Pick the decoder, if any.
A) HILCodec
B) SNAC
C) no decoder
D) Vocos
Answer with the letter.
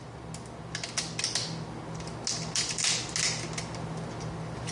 C